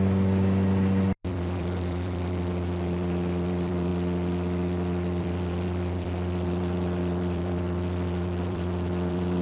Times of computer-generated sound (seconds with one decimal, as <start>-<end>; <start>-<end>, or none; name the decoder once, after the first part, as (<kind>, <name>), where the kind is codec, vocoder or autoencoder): 0.0-3.9 (vocoder, BigVGAN v2); 5.2-9.4